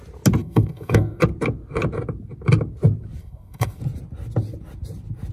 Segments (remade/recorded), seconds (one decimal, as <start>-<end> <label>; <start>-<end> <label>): 0.0-0.4 recorded; 0.4-1.2 remade; 1.2-3.2 recorded; 3.2-3.8 remade; 3.8-5.3 recorded